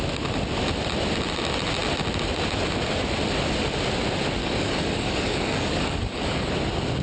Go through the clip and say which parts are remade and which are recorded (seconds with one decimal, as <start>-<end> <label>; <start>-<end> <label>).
0.0-4.4 recorded; 4.4-6.5 remade; 6.5-7.0 recorded